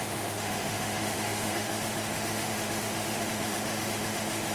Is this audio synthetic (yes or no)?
yes